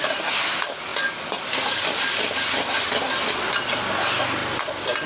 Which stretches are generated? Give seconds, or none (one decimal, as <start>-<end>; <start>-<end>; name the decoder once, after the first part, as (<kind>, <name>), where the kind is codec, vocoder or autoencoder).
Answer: none